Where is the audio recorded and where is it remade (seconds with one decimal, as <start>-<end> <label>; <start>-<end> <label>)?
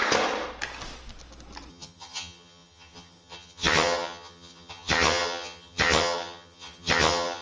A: 0.0-1.7 recorded; 1.7-7.4 remade